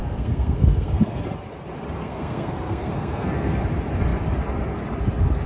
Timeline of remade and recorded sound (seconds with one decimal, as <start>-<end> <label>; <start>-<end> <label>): 0.0-1.2 remade; 1.2-2.0 recorded; 2.0-3.6 remade; 3.6-5.5 recorded